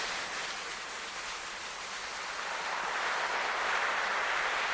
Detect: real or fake real